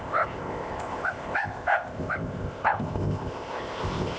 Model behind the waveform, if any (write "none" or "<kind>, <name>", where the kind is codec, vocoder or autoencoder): codec, ZipCodec